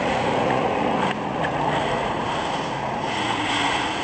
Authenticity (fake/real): fake